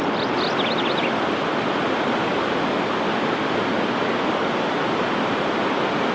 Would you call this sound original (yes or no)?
yes